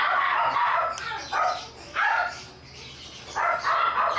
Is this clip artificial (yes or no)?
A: no